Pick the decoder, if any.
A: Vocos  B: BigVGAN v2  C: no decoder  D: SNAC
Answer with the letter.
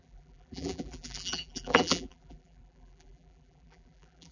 B